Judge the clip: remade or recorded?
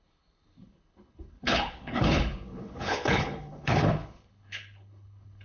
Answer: remade